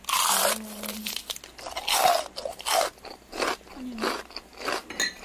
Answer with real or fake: real